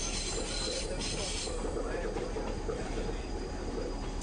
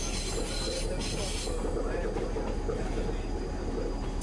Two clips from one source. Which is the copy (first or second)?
first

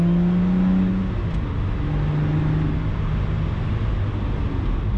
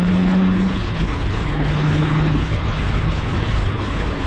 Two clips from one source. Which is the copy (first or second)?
second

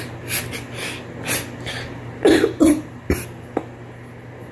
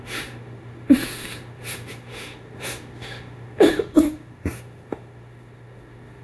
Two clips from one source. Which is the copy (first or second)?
second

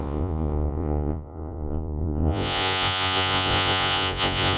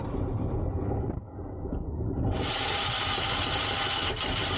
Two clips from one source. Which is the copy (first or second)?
first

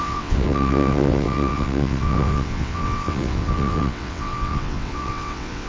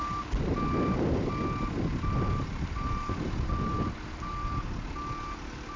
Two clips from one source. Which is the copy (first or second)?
first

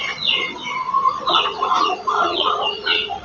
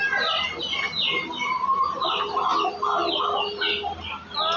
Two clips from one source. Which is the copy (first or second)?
first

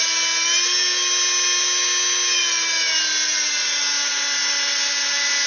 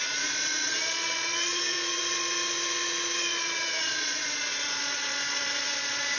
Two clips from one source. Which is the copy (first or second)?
second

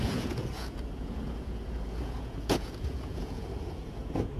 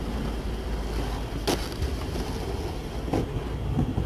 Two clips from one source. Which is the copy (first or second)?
first